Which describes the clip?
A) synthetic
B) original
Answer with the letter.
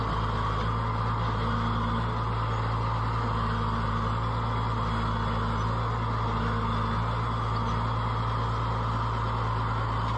B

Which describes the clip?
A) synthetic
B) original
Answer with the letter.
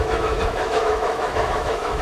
A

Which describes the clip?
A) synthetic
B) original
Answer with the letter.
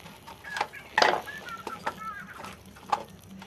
B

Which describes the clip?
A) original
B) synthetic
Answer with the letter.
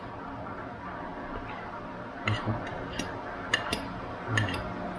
A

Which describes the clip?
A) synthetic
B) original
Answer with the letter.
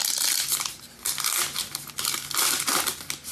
B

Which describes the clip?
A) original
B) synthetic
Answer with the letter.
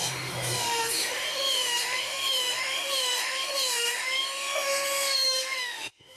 B